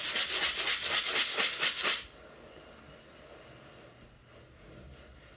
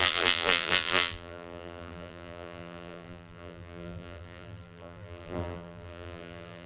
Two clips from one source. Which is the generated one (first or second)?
second